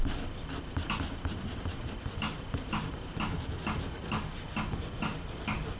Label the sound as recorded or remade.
recorded